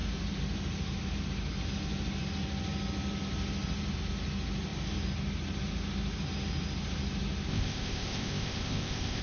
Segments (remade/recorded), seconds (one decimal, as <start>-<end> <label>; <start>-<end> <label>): 0.0-7.5 recorded; 7.5-9.2 remade